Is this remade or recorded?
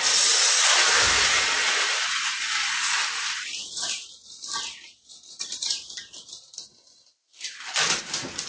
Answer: recorded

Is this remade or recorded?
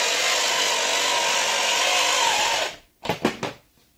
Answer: recorded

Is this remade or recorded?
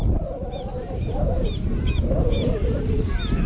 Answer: recorded